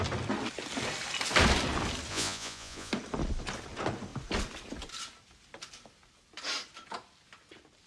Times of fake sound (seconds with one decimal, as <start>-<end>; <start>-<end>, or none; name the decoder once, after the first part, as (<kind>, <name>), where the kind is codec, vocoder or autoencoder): 2.1-2.9 (vocoder, Vocos)